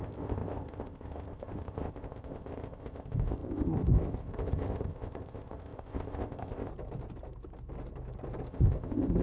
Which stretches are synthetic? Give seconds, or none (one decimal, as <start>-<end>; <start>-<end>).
0.0-6.7; 8.5-9.2